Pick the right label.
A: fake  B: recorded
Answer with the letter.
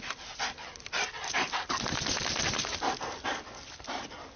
B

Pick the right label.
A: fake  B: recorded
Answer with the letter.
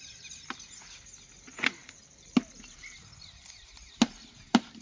B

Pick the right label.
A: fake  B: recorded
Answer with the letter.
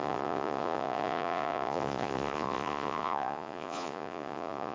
A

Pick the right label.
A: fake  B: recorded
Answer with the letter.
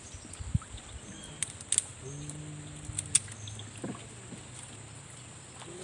B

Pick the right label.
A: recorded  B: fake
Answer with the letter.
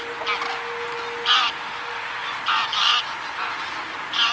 A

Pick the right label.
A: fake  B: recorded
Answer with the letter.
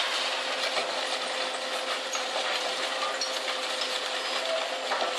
B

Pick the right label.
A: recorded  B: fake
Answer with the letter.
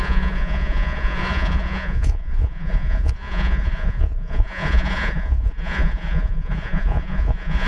B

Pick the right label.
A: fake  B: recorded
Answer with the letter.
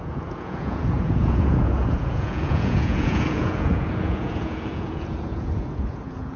A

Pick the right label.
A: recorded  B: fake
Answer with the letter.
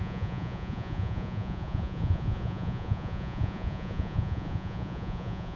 B